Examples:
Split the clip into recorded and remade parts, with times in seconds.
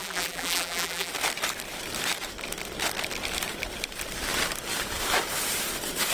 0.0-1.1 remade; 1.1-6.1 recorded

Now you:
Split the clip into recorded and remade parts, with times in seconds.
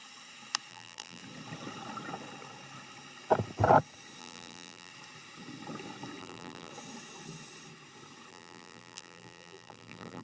0.0-0.7 recorded; 0.7-1.2 remade; 1.2-4.2 recorded; 4.2-4.9 remade; 4.9-6.2 recorded; 6.2-6.7 remade; 6.7-8.3 recorded; 8.3-10.2 remade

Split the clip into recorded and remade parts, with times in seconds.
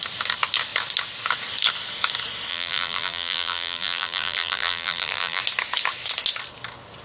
0.0-2.5 recorded; 2.5-5.4 remade; 5.4-7.0 recorded